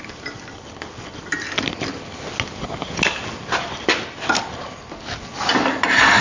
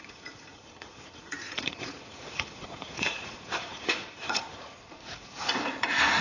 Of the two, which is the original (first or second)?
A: first